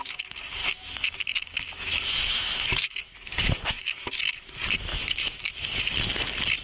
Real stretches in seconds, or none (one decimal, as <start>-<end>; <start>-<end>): 0.0-0.6; 4.1-4.9; 5.8-6.6